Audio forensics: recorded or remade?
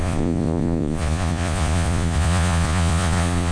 remade